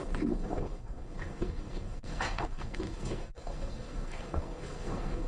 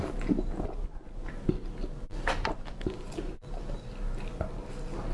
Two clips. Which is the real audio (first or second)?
second